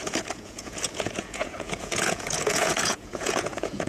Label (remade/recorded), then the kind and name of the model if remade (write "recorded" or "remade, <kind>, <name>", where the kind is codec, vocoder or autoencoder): remade, vocoder, Vocos